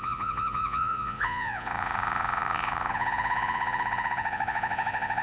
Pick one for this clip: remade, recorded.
remade